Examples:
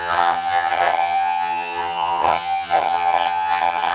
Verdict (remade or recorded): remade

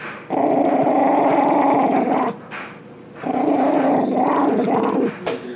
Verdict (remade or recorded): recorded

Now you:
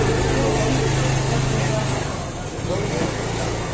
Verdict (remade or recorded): recorded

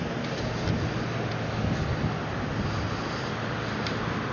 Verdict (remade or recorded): recorded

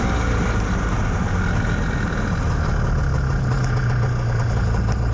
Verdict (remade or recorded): recorded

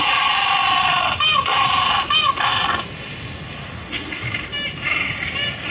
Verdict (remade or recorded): recorded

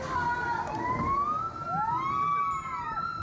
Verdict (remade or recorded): recorded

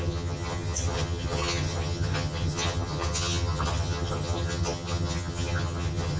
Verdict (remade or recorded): remade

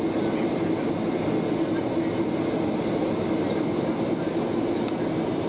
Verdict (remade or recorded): recorded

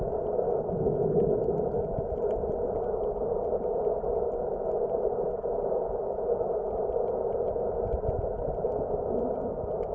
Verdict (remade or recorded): recorded